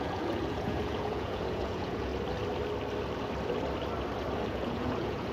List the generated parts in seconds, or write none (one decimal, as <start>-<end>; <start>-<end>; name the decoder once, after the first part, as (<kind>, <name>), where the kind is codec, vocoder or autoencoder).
0.0-2.1 (vocoder, Vocos); 4.5-5.3